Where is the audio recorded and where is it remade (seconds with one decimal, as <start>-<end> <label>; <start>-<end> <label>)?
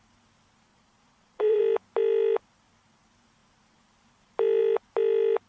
0.0-0.7 recorded; 0.7-1.6 remade; 1.6-5.5 recorded